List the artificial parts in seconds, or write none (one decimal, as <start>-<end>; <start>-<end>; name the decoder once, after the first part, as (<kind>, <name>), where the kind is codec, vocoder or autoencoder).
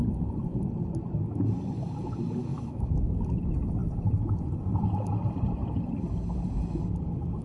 2.5-3.0 (autoencoder, DAC-VAE)